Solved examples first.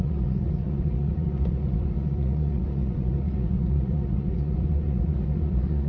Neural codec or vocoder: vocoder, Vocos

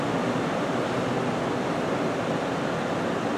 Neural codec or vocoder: none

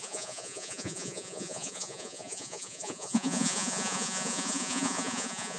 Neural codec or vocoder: vocoder, Vocos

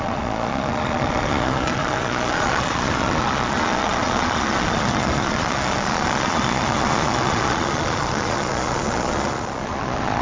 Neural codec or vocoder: vocoder, Vocos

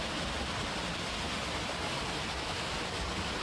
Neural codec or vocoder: none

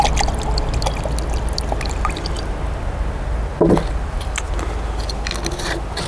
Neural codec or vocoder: none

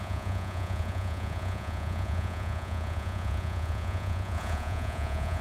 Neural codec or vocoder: vocoder, Vocos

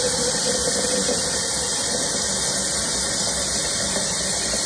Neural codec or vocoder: none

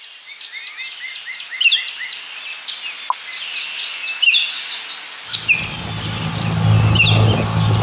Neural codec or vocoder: none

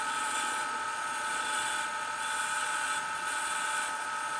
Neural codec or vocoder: vocoder, Vocos